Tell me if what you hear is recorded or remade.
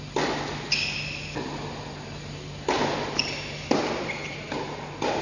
recorded